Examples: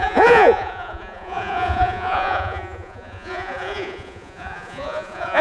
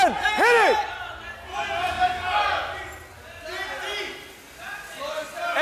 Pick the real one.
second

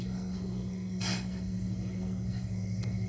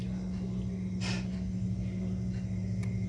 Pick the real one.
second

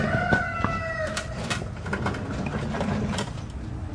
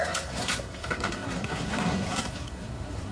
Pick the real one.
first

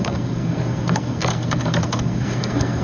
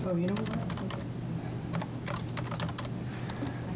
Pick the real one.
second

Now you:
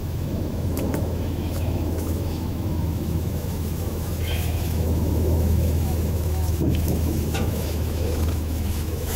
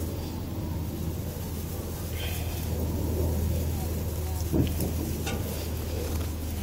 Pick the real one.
second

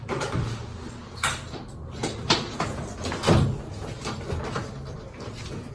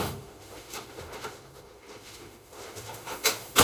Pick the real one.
first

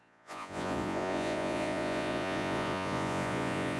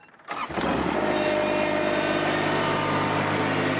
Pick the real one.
second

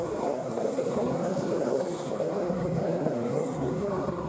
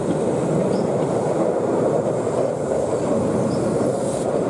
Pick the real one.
second